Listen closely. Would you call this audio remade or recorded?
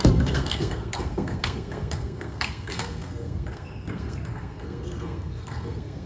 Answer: remade